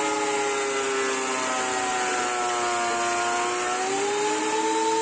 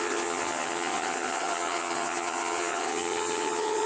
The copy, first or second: second